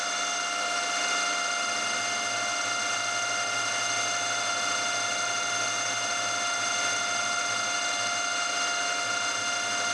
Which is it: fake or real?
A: real